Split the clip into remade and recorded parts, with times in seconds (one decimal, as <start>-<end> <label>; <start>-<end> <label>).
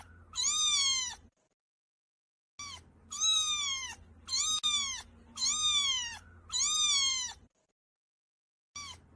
0.0-7.1 recorded; 7.1-8.1 remade; 8.1-9.2 recorded